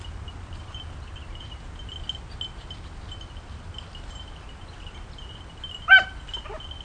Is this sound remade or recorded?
recorded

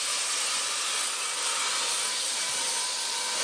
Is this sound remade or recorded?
recorded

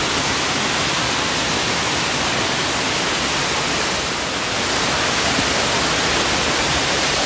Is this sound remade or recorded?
recorded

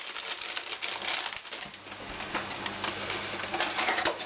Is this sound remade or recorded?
recorded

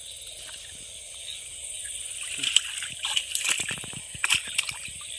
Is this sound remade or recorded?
recorded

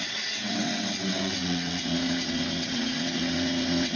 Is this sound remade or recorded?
remade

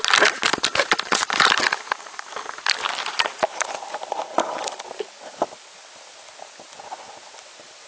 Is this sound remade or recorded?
recorded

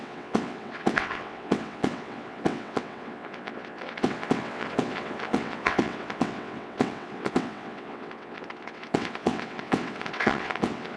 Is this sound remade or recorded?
remade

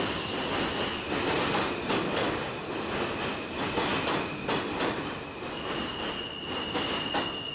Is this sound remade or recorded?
recorded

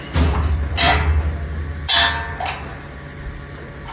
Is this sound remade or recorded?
recorded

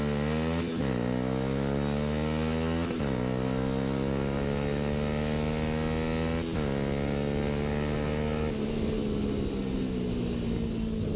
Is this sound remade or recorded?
recorded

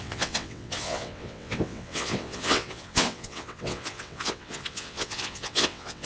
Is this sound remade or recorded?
remade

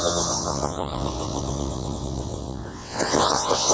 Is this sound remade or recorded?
remade